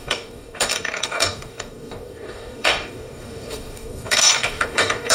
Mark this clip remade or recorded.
remade